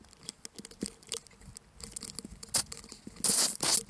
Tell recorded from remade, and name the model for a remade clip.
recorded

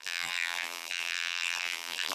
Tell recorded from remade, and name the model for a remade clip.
remade, vocoder, BigVGAN v2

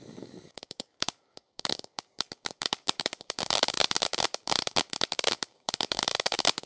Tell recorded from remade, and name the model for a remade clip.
remade, codec, DAC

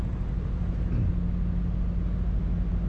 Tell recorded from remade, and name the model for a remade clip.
recorded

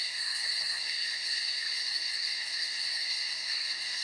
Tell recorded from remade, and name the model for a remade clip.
remade, codec, SNAC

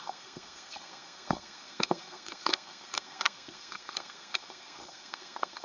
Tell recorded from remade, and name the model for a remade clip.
remade, codec, SNAC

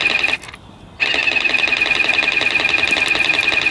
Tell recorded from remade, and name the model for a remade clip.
recorded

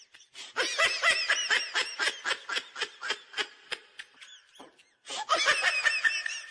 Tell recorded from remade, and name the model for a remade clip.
recorded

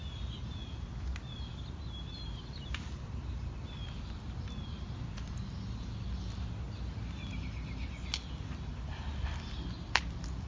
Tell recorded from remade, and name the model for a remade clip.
recorded